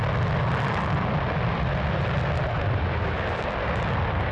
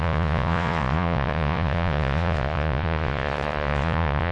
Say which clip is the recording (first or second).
first